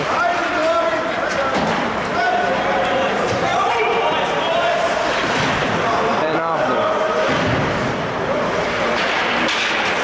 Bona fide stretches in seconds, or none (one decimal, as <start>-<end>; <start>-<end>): 0.6-1.4